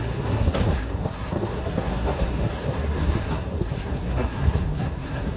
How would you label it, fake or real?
fake